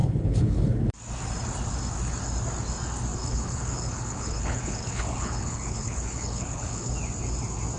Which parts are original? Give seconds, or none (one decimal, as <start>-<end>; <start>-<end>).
0.9-3.2; 6.9-7.8